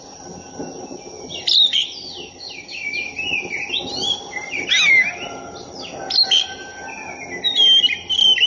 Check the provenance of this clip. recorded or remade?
recorded